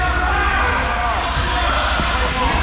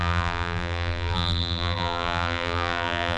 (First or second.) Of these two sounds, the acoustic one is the first